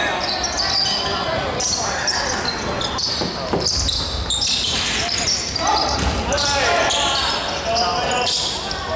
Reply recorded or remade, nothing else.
recorded